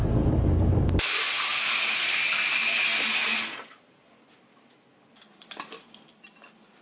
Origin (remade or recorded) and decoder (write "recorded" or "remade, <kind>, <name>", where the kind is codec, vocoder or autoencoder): recorded